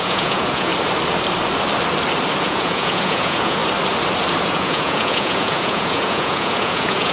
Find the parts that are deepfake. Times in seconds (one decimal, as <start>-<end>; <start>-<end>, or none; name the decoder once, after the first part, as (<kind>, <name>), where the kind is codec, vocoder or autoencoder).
0.0-0.7 (vocoder, Vocos); 2.4-3.6; 4.4-7.1